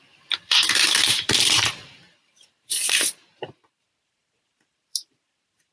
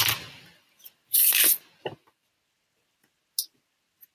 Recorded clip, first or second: second